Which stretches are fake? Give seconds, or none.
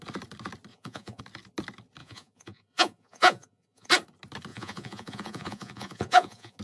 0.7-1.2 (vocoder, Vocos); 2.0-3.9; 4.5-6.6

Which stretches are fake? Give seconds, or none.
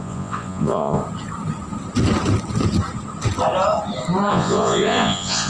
0.0-1.0 (vocoder, Vocos); 4.3-5.5